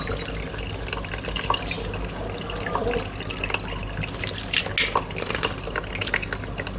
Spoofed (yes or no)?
no